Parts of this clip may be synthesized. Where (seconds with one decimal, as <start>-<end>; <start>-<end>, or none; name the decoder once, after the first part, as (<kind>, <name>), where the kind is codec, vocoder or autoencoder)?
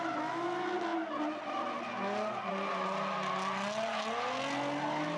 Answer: none